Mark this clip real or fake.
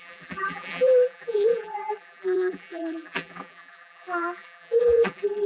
fake